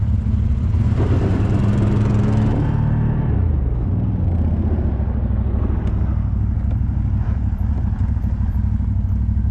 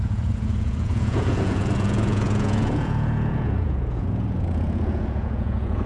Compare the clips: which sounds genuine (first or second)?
first